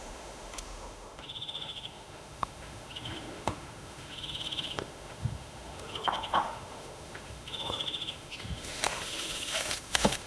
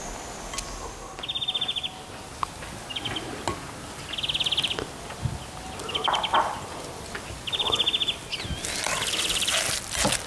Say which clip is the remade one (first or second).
first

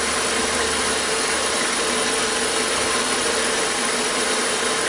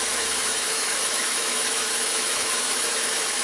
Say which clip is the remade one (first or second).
second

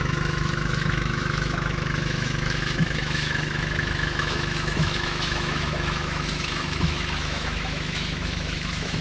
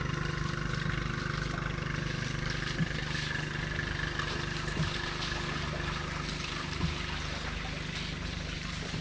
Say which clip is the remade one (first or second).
first